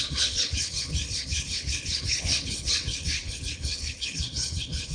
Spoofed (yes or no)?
yes